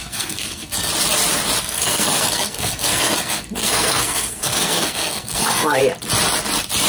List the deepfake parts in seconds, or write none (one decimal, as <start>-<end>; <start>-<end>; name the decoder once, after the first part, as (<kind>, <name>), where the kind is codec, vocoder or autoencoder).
0.0-0.9 (codec, SNAC); 1.6-5.8